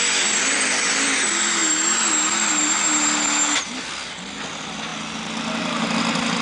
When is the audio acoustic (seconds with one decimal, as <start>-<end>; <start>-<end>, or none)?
0.0-6.4